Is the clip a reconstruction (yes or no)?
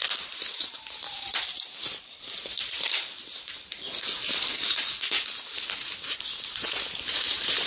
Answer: yes